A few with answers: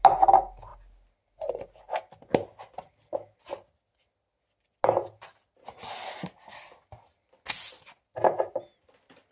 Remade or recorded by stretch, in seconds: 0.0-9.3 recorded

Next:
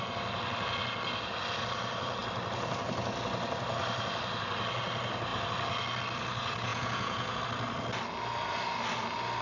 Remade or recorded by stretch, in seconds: 0.0-6.7 recorded; 6.7-7.4 remade; 7.4-9.4 recorded